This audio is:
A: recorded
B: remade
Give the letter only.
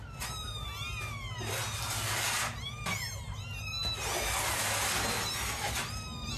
A